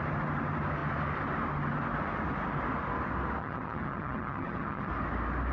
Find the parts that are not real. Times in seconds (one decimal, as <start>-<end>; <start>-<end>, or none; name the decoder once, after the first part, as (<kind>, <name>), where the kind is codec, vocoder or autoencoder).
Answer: 3.4-4.9 (vocoder, HiFi-GAN)